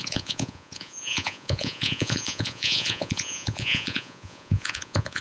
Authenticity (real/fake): fake